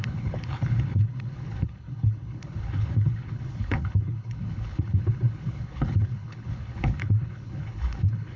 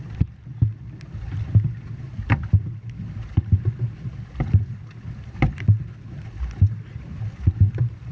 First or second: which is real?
second